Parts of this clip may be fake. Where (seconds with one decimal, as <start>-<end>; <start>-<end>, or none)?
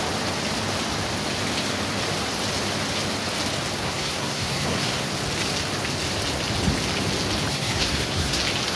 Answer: 3.8-5.1; 7.5-8.4